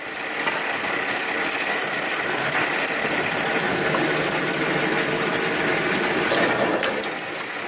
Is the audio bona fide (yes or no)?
yes